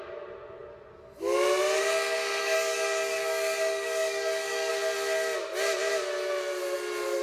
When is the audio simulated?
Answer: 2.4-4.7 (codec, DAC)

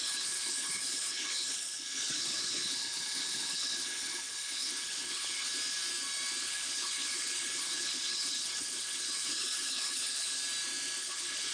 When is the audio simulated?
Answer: 0.0-5.5 (codec, HILCodec); 6.4-10.4; 11.0-11.5

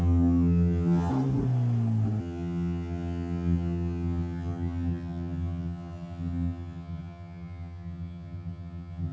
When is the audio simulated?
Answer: 0.0-1.1 (vocoder, HiFi-GAN); 2.2-9.1